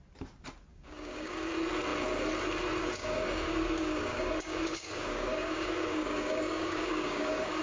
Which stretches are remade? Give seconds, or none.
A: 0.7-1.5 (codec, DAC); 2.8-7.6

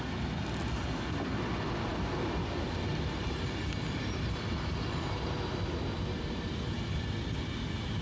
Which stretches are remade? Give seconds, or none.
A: none

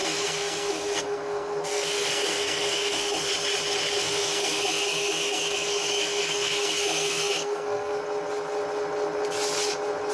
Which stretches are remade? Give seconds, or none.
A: 0.0-3.3 (codec, SNAC); 4.0-8.0

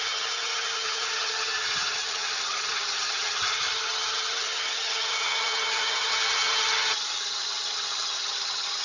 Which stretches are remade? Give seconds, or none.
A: 0.0-8.8 (vocoder, HiFi-GAN)

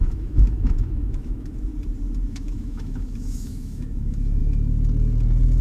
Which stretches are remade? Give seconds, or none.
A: 0.0-1.7 (autoencoder, DAC-VAE); 2.3-4.4

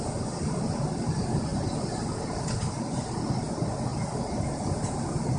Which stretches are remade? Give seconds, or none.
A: none

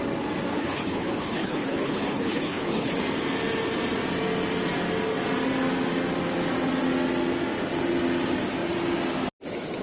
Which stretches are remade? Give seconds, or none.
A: 0.5-3.0 (codec, HILCodec)

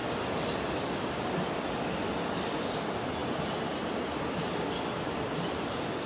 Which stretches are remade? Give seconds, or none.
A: none